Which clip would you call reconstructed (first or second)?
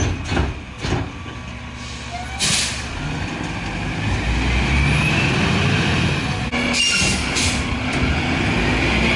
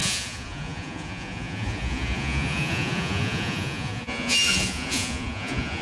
second